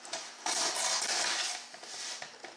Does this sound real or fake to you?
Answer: real